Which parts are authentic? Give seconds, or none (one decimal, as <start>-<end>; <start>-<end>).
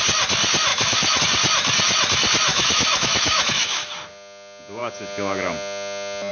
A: 0.0-0.7; 1.2-2.5; 3.9-6.3